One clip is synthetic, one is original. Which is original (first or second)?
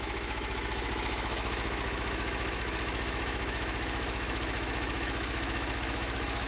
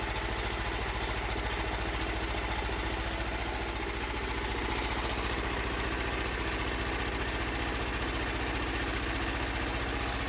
second